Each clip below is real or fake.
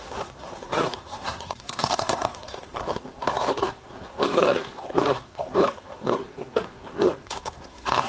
fake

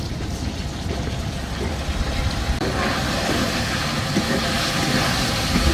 real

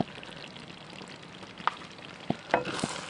real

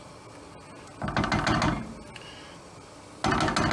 real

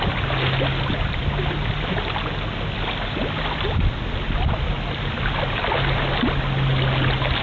real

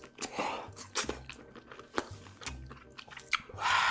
real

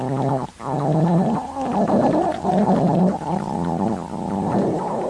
real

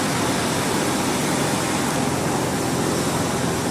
real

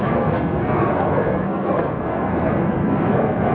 fake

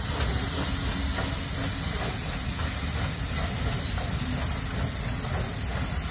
real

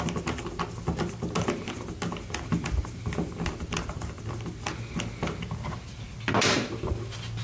real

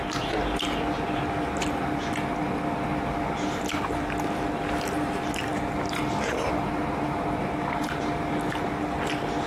real